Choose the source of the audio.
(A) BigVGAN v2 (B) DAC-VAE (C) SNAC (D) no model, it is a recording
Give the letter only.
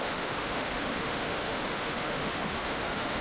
B